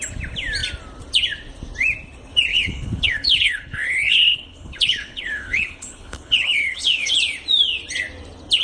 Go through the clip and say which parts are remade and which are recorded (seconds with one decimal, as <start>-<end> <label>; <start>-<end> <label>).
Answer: 0.0-2.5 recorded; 2.5-7.1 remade; 7.1-8.6 recorded